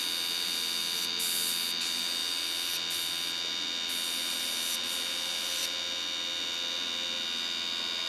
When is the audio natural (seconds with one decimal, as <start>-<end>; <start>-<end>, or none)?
0.0-8.1